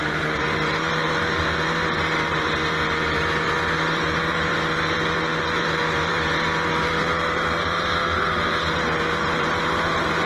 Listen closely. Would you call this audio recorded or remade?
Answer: remade